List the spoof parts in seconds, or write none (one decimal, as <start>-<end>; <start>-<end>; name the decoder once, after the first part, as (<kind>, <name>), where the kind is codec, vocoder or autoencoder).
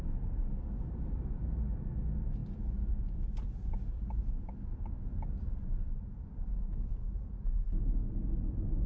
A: none